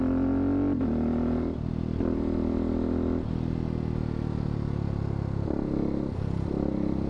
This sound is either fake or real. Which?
real